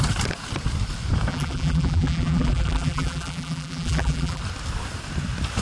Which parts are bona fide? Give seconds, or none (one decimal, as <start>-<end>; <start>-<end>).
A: 0.0-1.3; 4.4-5.6